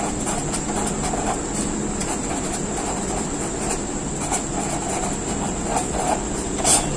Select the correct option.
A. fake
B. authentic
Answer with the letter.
B